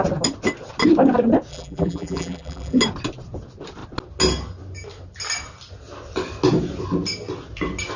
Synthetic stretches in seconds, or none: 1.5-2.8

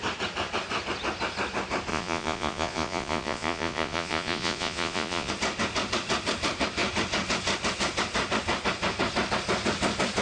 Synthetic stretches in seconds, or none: 1.9-5.3

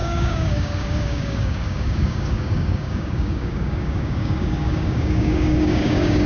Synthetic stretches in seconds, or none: 0.0-6.3

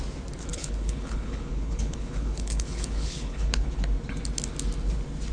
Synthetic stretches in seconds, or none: 0.5-3.7

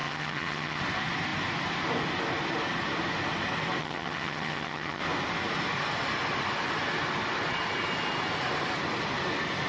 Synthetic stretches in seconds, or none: 0.0-0.8; 3.8-5.0